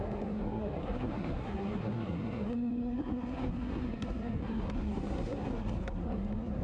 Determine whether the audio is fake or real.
fake